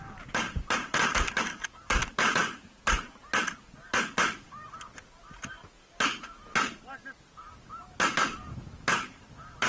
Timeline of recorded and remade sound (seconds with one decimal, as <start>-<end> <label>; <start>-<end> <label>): 0.0-9.7 recorded